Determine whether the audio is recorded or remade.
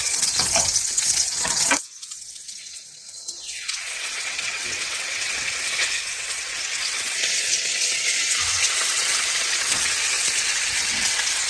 remade